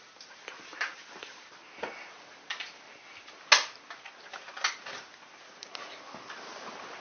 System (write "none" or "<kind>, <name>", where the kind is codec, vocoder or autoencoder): none